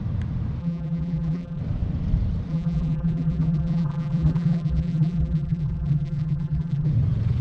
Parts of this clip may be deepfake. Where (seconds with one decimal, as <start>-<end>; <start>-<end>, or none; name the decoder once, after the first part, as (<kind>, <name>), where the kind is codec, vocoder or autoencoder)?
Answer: 0.6-1.6 (vocoder, BigVGAN v2); 2.5-6.9